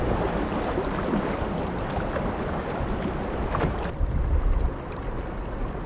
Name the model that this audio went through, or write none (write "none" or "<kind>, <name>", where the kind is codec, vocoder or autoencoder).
none